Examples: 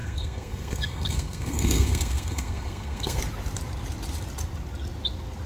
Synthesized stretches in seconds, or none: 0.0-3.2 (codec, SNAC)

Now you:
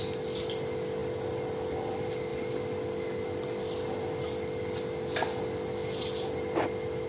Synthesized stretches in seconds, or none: none

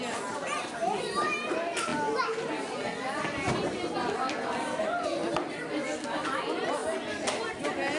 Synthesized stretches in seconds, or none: none

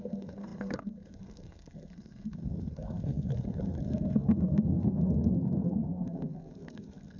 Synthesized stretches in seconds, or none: 0.0-7.2 (codec, SNAC)

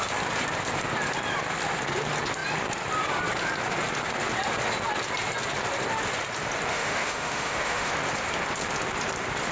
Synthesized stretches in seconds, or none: 6.7-7.9 (autoencoder, DAC-VAE)